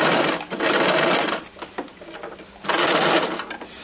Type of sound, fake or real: real